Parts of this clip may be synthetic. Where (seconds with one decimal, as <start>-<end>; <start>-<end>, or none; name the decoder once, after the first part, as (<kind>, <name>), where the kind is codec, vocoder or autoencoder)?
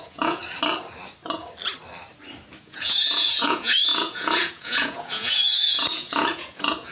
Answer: 0.0-0.4 (vocoder, Vocos); 2.6-6.9